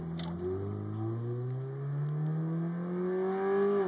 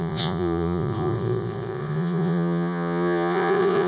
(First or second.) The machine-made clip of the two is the second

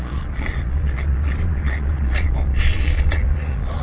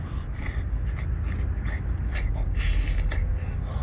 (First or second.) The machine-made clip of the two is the first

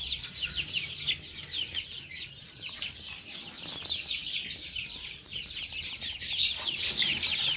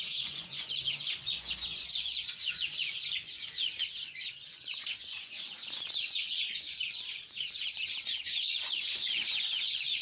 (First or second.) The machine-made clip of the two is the second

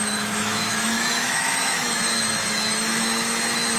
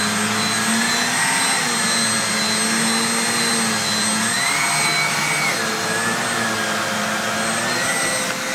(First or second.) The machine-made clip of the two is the first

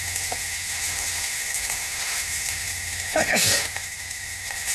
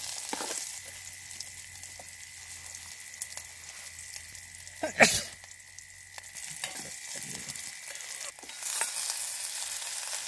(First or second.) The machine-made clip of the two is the first